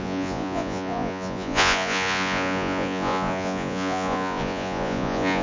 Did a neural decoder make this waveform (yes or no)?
yes